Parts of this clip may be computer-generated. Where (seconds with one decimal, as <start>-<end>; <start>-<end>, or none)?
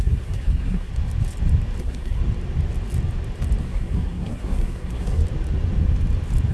0.0-0.9; 1.8-2.2; 3.6-5.2